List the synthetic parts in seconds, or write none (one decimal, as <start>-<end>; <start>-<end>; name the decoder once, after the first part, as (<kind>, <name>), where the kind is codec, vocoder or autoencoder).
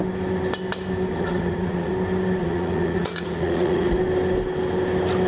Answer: 1.1-1.9 (vocoder, Vocos); 2.4-4.0